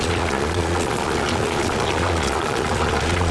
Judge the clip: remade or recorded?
remade